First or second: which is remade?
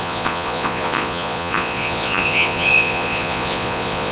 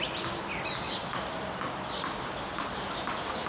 first